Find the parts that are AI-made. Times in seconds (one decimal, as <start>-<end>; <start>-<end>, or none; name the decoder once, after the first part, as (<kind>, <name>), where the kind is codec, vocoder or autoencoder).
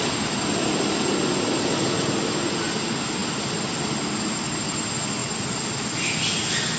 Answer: none